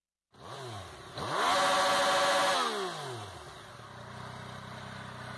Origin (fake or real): real